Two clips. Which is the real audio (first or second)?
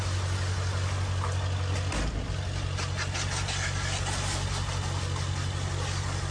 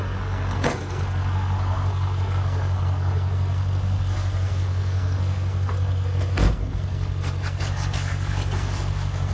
first